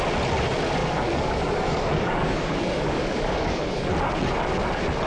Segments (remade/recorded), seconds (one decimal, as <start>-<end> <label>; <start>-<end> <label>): 0.0-0.8 recorded; 0.8-3.9 remade; 3.9-5.1 recorded